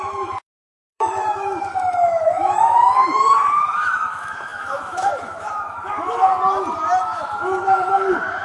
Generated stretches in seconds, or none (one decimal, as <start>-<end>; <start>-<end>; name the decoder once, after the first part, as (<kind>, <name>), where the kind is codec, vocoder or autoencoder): 0.0-6.3 (autoencoder, DAC-VAE); 7.0-8.4